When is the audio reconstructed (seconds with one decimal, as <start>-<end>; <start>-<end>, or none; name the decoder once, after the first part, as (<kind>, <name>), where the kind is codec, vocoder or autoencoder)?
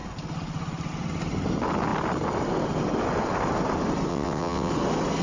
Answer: 4.1-4.7 (vocoder, WaveNeXt)